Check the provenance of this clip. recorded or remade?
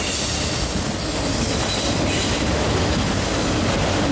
recorded